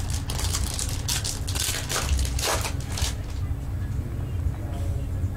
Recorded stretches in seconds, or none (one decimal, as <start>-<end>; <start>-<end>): 0.0-5.4